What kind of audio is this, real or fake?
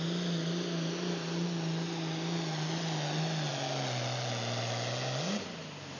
real